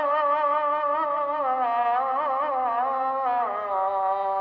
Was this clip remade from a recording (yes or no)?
no